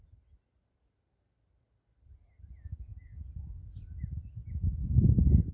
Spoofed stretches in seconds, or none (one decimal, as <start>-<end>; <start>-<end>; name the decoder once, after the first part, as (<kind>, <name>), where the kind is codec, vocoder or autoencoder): none